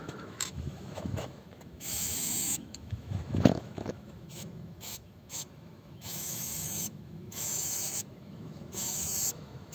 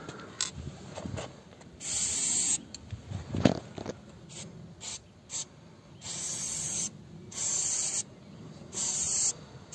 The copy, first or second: first